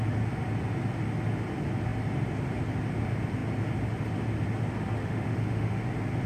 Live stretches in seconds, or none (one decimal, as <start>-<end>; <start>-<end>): 0.0-5.0; 5.8-6.3